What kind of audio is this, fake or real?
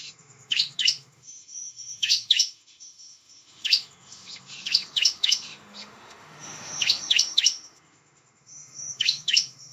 fake